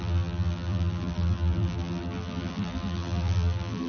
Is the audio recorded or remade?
remade